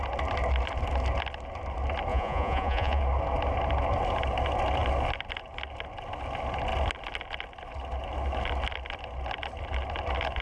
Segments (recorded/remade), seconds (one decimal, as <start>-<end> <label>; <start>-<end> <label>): 0.0-2.1 recorded; 2.1-3.0 remade; 3.0-10.4 recorded